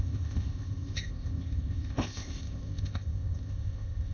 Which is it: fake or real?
fake